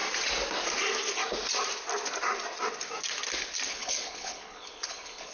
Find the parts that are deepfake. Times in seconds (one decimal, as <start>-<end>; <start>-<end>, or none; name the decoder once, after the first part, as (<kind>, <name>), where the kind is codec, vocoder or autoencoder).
3.7-5.3 (codec, HILCodec)